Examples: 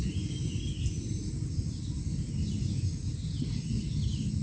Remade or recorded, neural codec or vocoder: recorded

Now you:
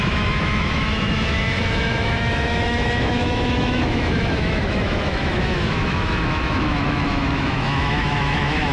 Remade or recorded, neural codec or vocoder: remade, autoencoder, DAC-VAE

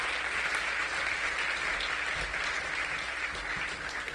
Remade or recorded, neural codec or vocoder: recorded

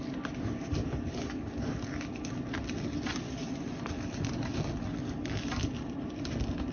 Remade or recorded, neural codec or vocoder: recorded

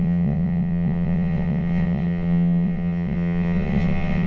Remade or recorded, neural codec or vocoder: remade, vocoder, WaveNeXt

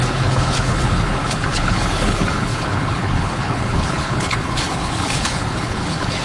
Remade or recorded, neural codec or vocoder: remade, codec, HILCodec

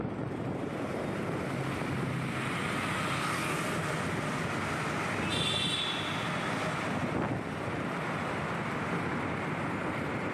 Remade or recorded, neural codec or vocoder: recorded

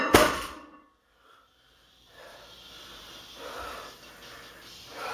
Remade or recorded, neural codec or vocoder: remade, vocoder, BigVGAN v2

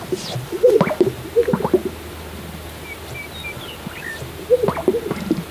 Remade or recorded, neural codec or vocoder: recorded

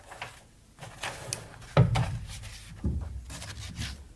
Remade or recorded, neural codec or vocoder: recorded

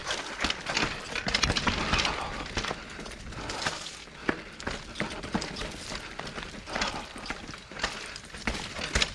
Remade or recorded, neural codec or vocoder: recorded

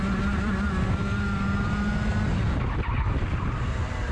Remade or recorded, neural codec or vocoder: recorded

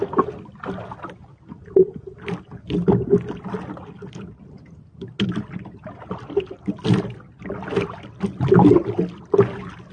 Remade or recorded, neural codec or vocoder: recorded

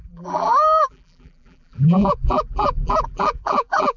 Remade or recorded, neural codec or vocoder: remade, vocoder, BigVGAN v2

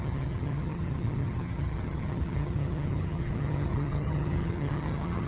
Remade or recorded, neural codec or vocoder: remade, vocoder, HiFi-GAN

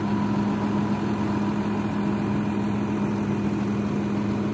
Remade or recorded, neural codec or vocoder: recorded